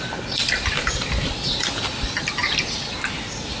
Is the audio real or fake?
real